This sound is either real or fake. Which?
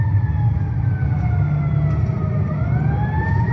real